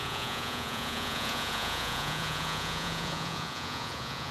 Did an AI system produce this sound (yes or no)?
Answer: yes